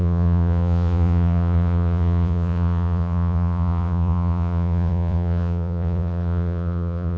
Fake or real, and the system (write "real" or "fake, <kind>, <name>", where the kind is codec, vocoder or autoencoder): fake, vocoder, Vocos